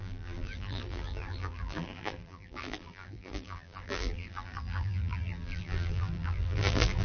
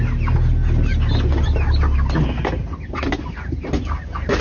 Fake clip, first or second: first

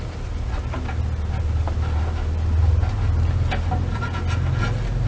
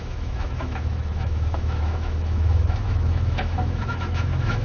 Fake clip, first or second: second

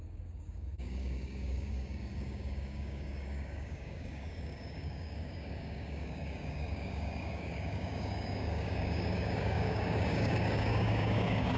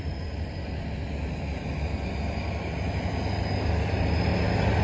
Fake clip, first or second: first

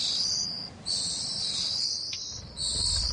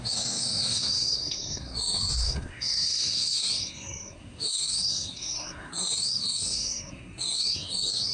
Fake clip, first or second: second